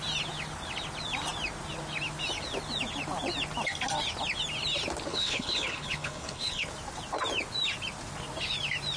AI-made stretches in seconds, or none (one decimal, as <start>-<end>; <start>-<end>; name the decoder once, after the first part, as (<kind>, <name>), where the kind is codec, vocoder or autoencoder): 5.1-6.7 (codec, HILCodec)